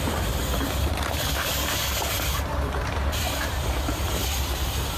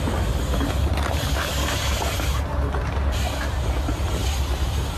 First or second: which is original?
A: second